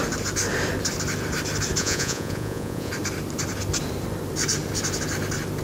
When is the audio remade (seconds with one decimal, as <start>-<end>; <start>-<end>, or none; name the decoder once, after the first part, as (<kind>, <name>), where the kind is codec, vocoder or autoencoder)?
1.8-2.9 (vocoder, Vocos)